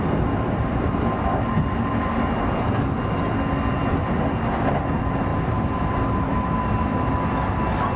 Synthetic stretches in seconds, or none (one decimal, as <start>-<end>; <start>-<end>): 5.3-7.1